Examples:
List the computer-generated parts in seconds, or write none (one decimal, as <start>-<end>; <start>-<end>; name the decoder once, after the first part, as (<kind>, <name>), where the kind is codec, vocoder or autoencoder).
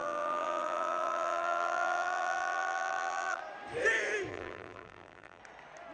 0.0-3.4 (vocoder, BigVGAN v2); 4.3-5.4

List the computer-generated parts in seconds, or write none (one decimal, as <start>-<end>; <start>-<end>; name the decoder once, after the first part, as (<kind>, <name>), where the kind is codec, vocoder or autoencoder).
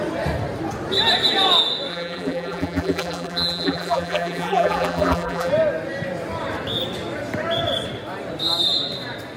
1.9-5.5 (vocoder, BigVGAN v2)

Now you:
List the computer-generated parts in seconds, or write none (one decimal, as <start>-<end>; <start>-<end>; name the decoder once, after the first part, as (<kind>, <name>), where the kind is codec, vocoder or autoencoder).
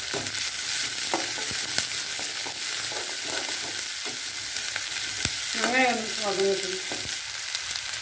2.1-2.6 (codec, HILCodec)